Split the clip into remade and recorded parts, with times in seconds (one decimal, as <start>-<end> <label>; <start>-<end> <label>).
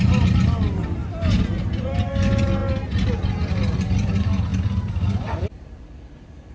0.0-1.0 remade; 1.0-1.6 recorded; 1.6-2.6 remade; 2.6-3.5 recorded; 3.5-6.5 remade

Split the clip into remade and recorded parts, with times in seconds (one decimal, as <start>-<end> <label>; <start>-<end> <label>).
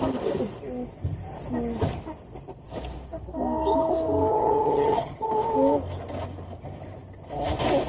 0.0-4.3 recorded; 4.3-5.3 remade; 5.3-7.9 recorded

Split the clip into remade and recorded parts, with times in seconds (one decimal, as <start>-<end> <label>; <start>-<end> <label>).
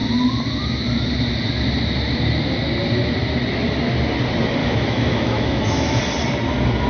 0.0-4.6 recorded; 4.6-6.0 remade; 6.0-6.9 recorded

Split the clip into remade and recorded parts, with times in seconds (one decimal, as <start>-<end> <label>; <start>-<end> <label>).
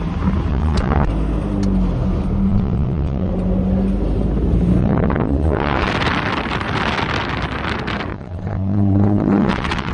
0.0-0.5 recorded; 0.5-1.1 remade; 1.1-2.5 recorded; 2.5-3.3 remade; 3.3-4.8 recorded; 4.8-5.9 remade; 5.9-8.1 recorded; 8.1-9.9 remade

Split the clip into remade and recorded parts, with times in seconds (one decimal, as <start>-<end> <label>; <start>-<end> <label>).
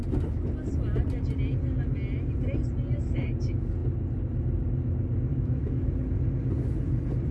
0.0-5.3 recorded; 5.3-5.9 remade; 5.9-7.3 recorded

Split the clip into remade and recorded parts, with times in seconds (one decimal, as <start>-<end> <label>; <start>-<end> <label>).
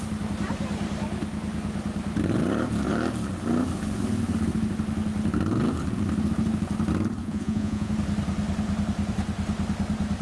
0.0-7.2 recorded; 7.2-7.9 remade; 7.9-10.2 recorded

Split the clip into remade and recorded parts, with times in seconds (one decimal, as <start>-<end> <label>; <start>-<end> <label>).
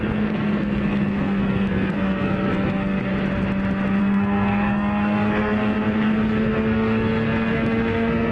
0.0-3.1 remade; 3.1-4.0 recorded; 4.0-8.3 remade